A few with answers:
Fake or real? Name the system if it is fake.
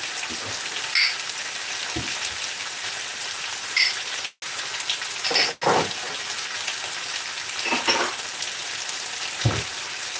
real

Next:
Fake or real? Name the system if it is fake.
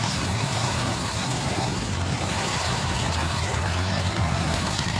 fake, codec, SNAC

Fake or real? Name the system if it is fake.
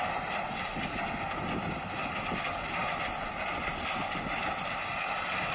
real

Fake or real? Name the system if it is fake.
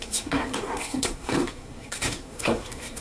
fake, codec, SNAC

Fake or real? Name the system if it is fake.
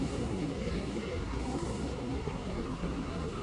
fake, codec, SNAC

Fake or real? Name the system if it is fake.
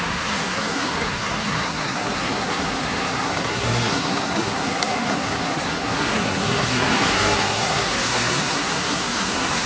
fake, codec, SNAC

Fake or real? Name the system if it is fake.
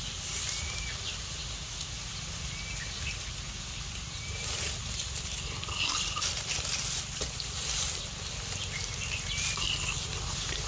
real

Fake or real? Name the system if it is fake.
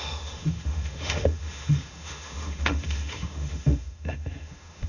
fake, autoencoder, DAC-VAE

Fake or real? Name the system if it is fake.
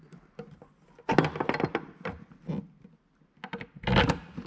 real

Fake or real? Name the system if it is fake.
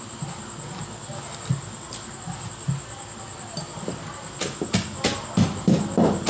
real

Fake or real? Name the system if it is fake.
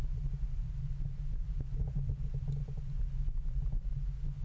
real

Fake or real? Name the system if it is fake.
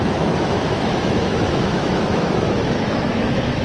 fake, autoencoder, DAC-VAE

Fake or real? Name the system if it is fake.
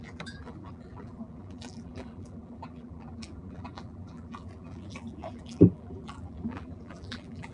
fake, vocoder, BigVGAN v2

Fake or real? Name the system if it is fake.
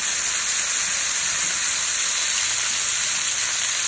real